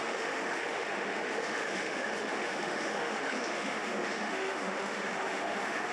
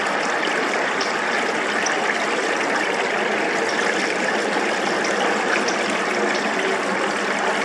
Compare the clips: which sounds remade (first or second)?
first